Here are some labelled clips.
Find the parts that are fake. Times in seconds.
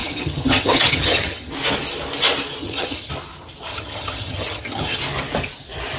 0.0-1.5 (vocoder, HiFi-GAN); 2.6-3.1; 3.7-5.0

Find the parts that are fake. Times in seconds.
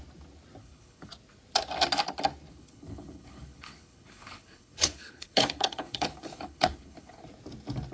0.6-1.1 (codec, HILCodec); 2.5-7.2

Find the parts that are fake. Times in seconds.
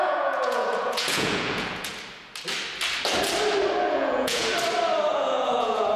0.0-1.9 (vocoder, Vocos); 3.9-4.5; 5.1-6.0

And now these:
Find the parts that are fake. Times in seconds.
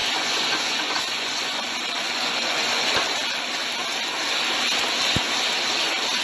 0.0-2.9 (vocoder, Vocos)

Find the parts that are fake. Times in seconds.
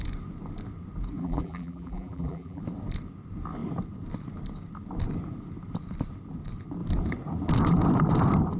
1.2-2.6 (vocoder, BigVGAN v2)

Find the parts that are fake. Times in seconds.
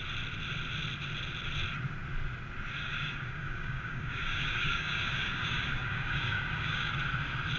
2.8-6.9 (codec, DAC)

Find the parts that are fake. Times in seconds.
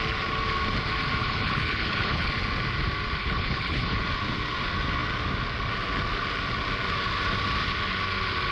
1.2-2.3 (codec, HILCodec); 3.2-4.0